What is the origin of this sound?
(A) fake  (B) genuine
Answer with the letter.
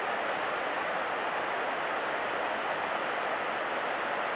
B